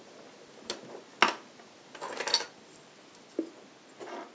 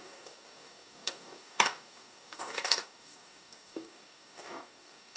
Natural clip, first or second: first